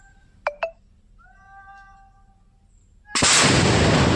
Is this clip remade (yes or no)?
no